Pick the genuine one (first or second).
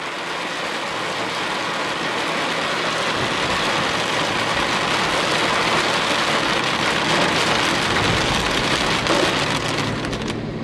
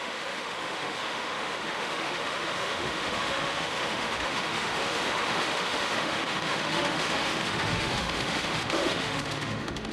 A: first